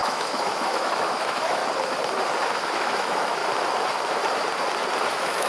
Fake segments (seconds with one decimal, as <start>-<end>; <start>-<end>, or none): 0.0-1.6; 2.5-3.4; 5.1-5.5